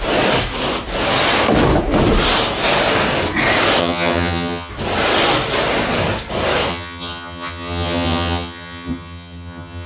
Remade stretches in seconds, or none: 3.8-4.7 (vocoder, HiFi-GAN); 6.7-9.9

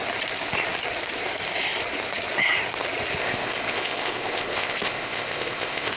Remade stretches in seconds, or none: 3.2-6.0 (codec, ZipCodec)

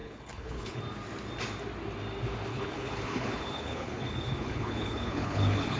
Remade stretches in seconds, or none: 0.0-0.8 (codec, HILCodec); 2.5-5.8

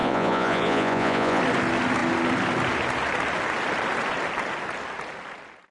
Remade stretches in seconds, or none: 0.0-1.4 (vocoder, Vocos)

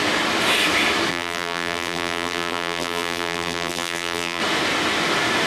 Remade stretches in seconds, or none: 1.1-4.4 (vocoder, BigVGAN v2)

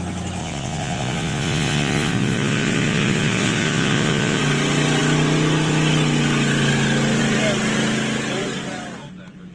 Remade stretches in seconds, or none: 0.4-4.4 (vocoder, Vocos)

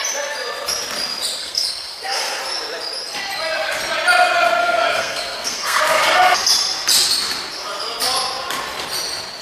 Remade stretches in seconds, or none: 1.4-2.4 (codec, SNAC); 4.6-5.8